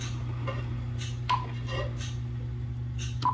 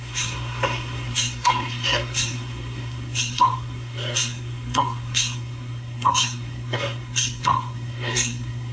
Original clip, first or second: first